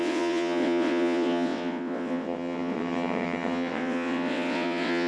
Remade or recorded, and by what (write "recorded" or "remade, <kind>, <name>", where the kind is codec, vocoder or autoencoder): remade, vocoder, WaveNeXt